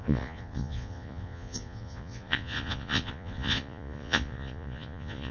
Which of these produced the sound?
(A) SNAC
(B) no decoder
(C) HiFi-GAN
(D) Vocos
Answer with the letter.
D